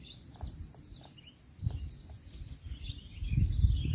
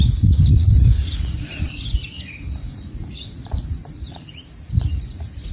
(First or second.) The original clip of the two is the first